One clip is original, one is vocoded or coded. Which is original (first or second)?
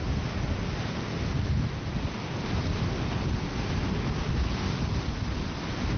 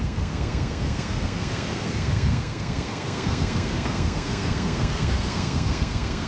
first